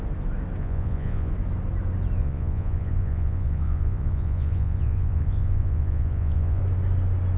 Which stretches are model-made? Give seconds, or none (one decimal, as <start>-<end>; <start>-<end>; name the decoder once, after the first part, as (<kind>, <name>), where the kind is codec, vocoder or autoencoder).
0.6-1.3 (vocoder, Vocos); 2.2-6.6